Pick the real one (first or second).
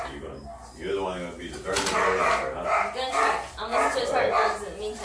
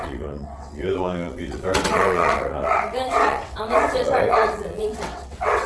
first